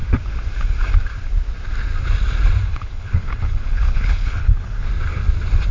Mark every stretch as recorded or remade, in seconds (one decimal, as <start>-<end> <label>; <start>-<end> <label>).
0.0-2.7 recorded; 2.7-4.9 remade; 4.9-5.7 recorded